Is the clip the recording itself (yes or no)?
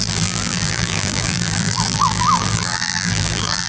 no